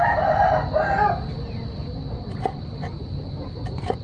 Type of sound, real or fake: real